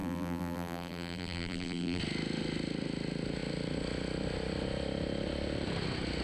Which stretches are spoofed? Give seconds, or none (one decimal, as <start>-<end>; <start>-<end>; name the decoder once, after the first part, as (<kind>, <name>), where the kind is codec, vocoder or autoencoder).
0.0-2.0 (vocoder, BigVGAN v2)